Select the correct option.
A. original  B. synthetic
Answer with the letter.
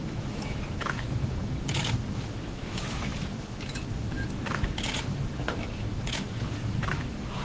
B